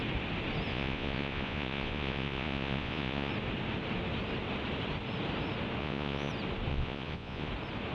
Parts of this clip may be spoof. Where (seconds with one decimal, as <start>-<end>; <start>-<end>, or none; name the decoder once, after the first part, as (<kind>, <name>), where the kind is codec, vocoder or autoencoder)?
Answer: 0.7-3.3 (vocoder, Vocos); 5.8-6.3; 6.7-7.5